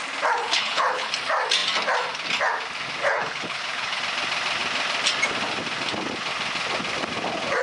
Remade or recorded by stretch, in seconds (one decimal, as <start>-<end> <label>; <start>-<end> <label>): 0.0-0.4 recorded; 0.4-1.1 remade; 1.1-3.0 recorded; 3.0-4.0 remade; 4.0-7.6 recorded